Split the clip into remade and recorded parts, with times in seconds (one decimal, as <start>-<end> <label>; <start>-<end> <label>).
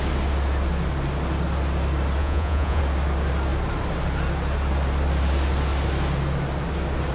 0.0-2.2 recorded; 2.2-2.8 remade; 2.8-7.1 recorded